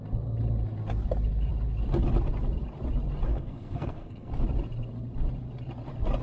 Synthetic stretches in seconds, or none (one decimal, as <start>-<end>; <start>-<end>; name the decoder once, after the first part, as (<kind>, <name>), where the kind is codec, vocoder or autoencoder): 3.3-4.3 (codec, SNAC)